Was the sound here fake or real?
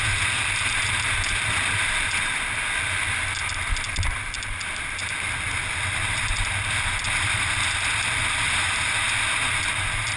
real